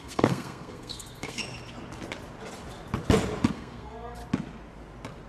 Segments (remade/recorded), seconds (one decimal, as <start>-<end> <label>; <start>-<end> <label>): 0.0-1.4 remade; 1.4-3.5 recorded; 3.5-4.2 remade; 4.2-5.3 recorded